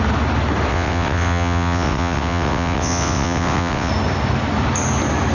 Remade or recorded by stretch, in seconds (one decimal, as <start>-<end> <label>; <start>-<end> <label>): 0.0-0.7 recorded; 0.7-3.9 remade; 3.9-5.3 recorded